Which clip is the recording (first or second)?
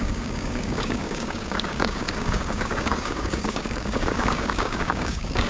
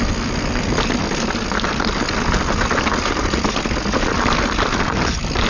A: second